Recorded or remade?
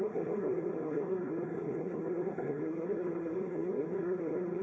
remade